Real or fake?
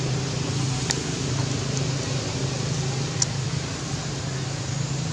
real